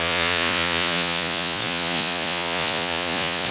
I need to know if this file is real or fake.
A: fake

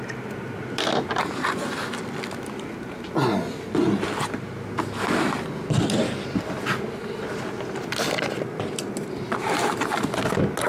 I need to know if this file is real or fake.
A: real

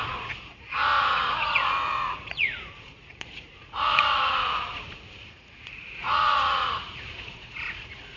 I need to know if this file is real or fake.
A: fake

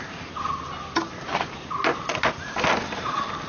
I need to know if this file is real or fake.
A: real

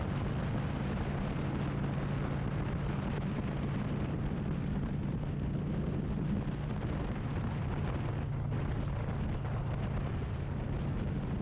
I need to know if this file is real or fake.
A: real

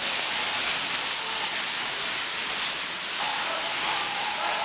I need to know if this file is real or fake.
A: real